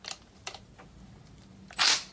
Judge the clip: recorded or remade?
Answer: recorded